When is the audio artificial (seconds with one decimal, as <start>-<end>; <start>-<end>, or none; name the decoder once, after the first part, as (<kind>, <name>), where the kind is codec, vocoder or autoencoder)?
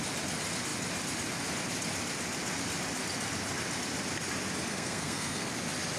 4.7-5.5 (codec, SNAC)